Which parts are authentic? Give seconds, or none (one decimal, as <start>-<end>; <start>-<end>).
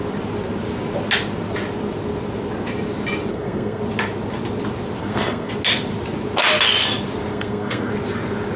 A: 0.0-3.3; 3.8-5.0; 5.5-7.3; 7.9-8.6